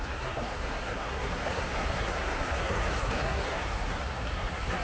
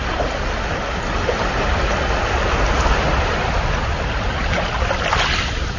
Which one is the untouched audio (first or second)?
second